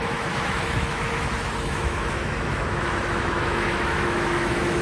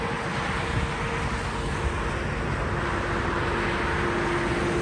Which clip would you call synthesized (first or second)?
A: first